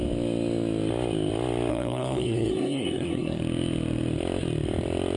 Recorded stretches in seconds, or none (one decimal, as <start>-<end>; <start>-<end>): 0.0-1.7; 3.4-5.2